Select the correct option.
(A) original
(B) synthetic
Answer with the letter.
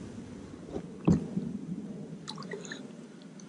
A